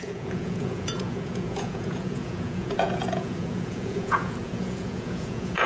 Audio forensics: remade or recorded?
remade